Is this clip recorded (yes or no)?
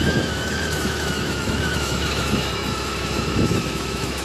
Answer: no